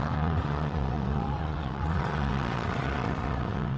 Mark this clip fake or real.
fake